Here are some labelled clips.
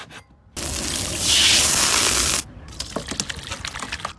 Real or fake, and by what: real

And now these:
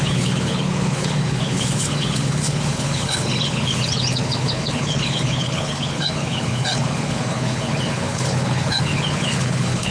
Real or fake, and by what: fake, codec, HILCodec